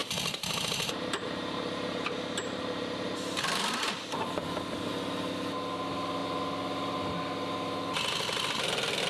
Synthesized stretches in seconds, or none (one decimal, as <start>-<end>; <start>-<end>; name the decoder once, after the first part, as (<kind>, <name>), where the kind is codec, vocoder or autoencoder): 0.0-4.9 (vocoder, BigVGAN v2)